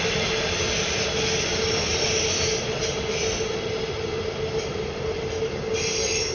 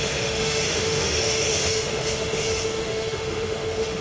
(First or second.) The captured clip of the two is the first